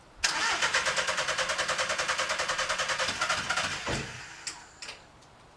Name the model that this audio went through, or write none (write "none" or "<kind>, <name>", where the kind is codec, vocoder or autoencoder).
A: none